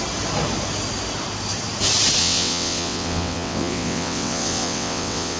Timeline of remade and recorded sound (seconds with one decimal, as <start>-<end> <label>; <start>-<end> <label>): 0.0-2.2 recorded; 2.2-5.4 remade